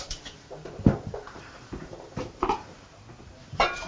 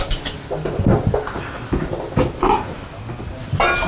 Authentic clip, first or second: second